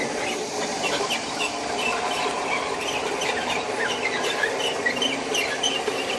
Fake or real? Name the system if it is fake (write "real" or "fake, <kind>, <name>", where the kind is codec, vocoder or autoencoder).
fake, vocoder, BigVGAN v2